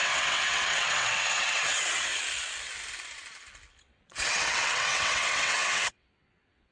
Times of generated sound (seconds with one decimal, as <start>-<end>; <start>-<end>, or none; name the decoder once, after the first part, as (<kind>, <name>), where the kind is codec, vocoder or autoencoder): 0.0-2.1 (vocoder, WaveNeXt); 3.8-6.7